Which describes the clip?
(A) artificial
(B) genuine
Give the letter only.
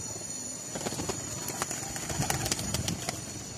B